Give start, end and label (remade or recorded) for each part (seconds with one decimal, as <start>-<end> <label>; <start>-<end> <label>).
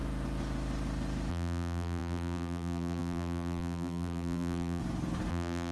0.0-1.3 recorded; 1.3-4.8 remade; 4.8-5.3 recorded; 5.3-5.7 remade